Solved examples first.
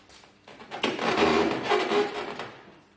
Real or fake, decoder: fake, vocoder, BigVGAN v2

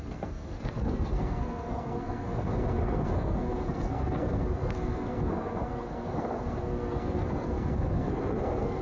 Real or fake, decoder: fake, codec, SNAC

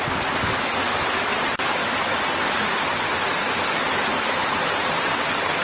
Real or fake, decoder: real